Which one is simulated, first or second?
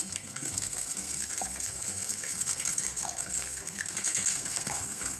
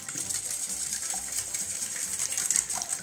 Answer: first